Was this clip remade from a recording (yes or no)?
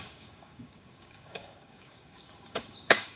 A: yes